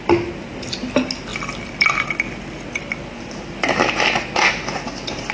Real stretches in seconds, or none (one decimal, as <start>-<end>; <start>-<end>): 0.0-5.3